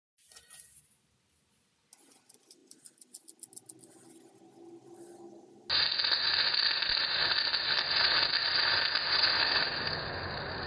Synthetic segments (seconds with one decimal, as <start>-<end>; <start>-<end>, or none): none